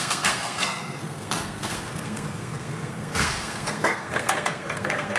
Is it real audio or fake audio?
fake